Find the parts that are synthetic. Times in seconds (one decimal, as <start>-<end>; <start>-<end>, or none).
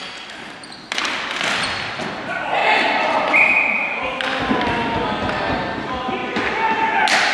2.6-4.4